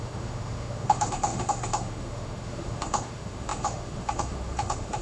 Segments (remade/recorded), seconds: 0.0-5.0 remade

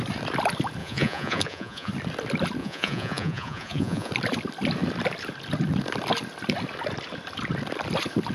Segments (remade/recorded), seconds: 0.0-0.8 recorded; 0.8-1.9 remade; 1.9-2.6 recorded; 2.6-4.1 remade; 4.1-8.3 recorded

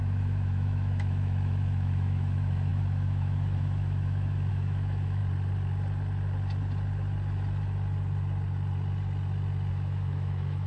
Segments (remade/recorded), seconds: 0.0-5.2 remade; 5.2-9.7 recorded; 9.7-10.7 remade

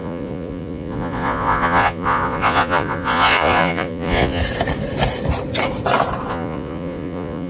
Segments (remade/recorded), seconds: 0.0-4.4 remade; 4.4-6.3 recorded; 6.3-7.5 remade

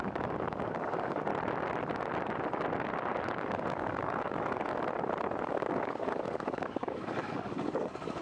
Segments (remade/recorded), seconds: 0.0-1.3 remade; 1.3-3.3 recorded; 3.3-4.7 remade; 4.7-5.5 recorded; 5.5-8.2 remade

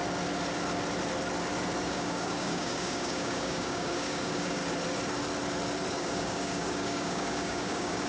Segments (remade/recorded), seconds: 0.0-1.8 recorded; 1.8-4.6 remade; 4.6-5.9 recorded; 5.9-8.1 remade